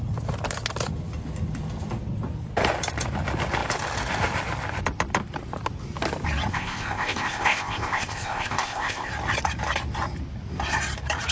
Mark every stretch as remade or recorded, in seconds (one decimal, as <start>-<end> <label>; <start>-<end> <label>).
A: 0.0-6.5 recorded; 6.5-9.1 remade; 9.1-11.3 recorded